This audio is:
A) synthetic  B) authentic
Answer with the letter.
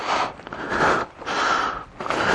B